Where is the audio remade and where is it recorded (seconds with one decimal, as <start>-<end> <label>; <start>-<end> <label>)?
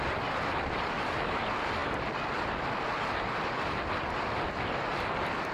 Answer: 0.0-5.5 recorded